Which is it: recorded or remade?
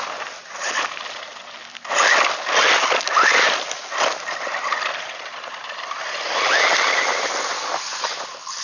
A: recorded